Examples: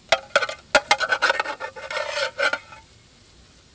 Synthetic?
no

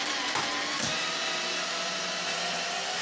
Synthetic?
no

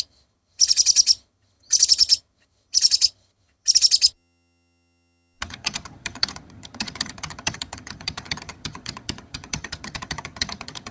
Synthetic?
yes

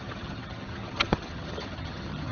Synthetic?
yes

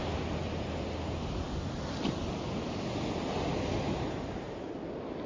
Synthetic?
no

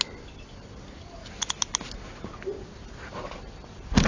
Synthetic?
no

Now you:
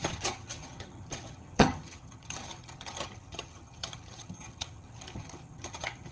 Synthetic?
yes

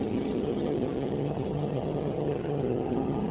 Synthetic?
yes